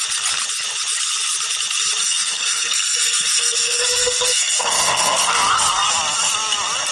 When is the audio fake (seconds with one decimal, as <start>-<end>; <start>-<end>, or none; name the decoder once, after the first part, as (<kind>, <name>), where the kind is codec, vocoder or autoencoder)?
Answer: 2.0-5.9 (codec, SNAC)